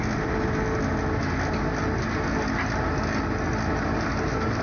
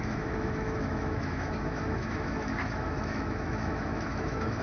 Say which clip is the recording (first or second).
first